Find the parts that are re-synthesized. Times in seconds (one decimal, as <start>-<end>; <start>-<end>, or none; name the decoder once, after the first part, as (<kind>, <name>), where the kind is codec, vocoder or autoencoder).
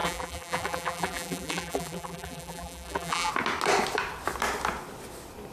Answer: 0.0-3.3 (vocoder, BigVGAN v2)